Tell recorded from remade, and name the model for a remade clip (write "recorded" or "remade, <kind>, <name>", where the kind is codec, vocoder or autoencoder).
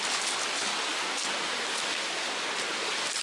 recorded